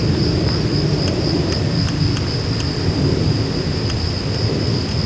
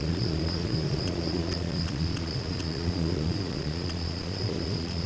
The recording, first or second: first